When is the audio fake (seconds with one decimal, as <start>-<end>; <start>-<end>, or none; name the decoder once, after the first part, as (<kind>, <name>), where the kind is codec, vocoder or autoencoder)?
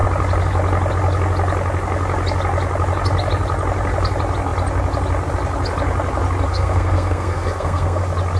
6.5-8.0 (codec, SNAC)